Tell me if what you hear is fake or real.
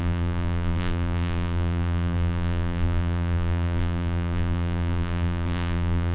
fake